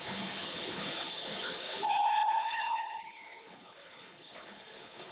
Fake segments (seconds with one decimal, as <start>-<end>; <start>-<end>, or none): 0.0-5.1